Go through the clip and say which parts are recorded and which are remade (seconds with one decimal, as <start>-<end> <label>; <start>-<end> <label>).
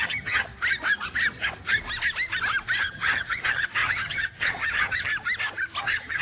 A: 0.0-0.5 remade; 0.5-2.8 recorded; 2.8-5.1 remade; 5.1-5.8 recorded; 5.8-6.2 remade